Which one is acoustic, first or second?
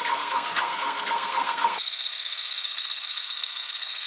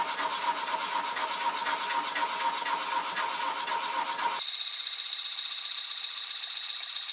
second